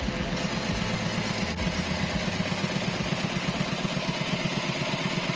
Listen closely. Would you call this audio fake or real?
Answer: real